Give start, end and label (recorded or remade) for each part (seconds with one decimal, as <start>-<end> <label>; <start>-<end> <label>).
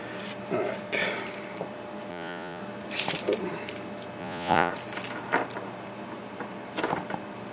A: 0.0-2.1 recorded; 2.1-2.6 remade; 2.6-4.2 recorded; 4.2-4.7 remade; 4.7-7.5 recorded